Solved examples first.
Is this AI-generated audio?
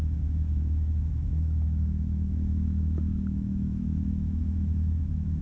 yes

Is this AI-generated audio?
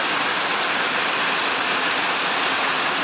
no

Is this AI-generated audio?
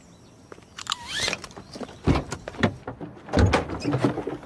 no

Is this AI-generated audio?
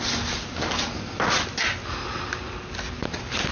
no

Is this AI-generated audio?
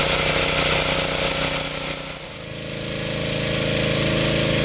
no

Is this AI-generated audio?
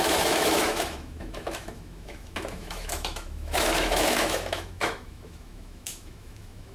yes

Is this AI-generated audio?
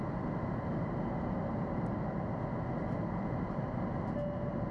no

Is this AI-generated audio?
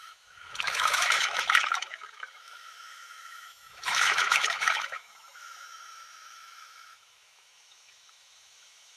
yes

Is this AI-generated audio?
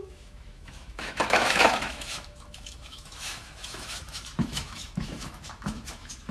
yes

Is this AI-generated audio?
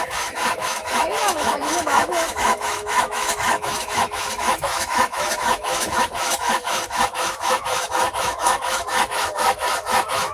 yes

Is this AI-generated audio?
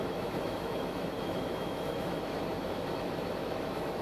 yes